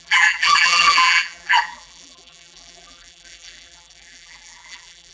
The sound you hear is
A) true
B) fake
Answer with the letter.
B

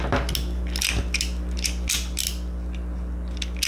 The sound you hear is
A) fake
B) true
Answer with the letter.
B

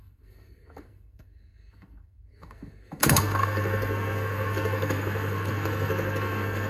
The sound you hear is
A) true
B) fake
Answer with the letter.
B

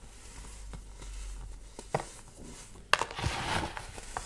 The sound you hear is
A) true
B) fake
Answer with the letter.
A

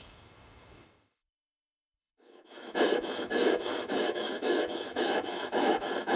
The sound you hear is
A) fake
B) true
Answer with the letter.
A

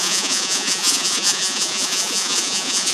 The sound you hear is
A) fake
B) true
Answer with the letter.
A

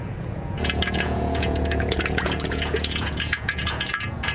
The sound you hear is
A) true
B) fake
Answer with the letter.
B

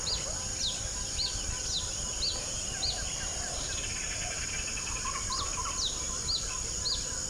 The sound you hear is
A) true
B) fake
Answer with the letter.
A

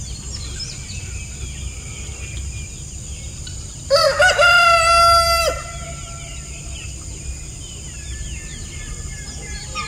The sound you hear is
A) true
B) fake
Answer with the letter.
A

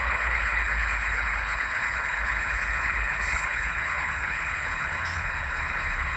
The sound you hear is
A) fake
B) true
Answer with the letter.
A